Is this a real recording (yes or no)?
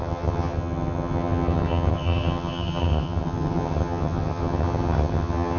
no